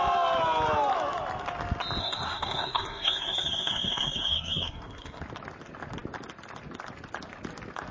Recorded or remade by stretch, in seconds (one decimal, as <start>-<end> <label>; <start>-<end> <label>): 0.0-2.0 recorded; 2.0-5.2 remade; 5.2-7.9 recorded